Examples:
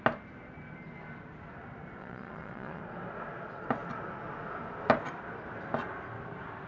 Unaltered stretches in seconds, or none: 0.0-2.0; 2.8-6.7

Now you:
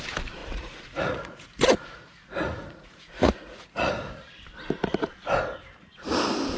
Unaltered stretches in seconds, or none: 0.0-0.4; 3.9-6.6

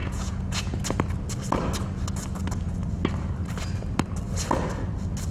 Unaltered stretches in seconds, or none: 0.7-5.3

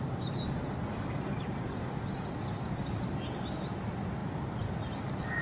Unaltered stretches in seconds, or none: 0.0-5.4

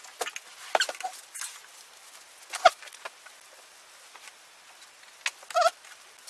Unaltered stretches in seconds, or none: 0.0-6.3

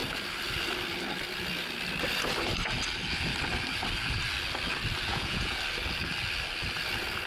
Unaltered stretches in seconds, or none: 0.0-5.1; 5.6-7.3

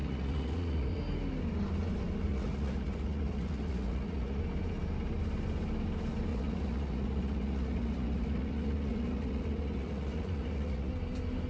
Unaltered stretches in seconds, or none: 1.0-2.3; 4.4-6.3; 10.9-11.5